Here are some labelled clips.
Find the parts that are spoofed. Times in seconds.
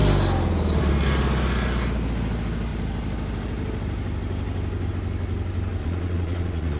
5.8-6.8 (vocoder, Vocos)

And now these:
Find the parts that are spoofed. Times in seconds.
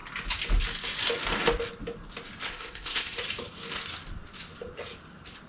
2.5-3.2 (codec, ZipCodec)